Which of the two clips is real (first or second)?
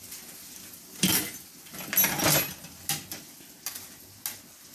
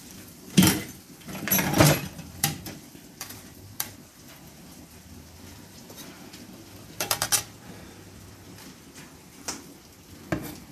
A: first